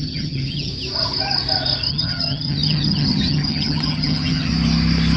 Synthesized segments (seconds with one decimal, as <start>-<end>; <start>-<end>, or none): 0.0-0.7; 1.9-4.5